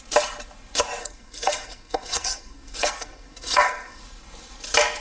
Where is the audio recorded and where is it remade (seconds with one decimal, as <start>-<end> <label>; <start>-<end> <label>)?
0.0-1.0 recorded; 1.0-4.0 remade; 4.0-5.0 recorded